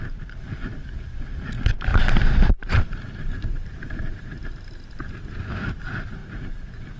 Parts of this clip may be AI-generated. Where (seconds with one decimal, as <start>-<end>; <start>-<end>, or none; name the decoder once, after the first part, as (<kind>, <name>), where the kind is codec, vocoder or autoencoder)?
1.9-5.5 (vocoder, BigVGAN v2); 6.2-7.0